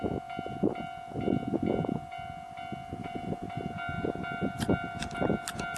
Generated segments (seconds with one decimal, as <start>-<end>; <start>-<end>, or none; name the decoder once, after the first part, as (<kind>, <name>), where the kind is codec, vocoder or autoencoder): 3.0-3.6 (vocoder, Vocos)